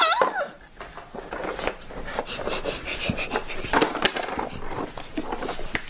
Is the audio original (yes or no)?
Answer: yes